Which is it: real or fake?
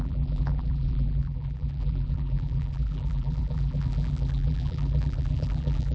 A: fake